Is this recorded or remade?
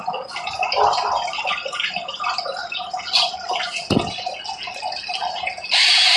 recorded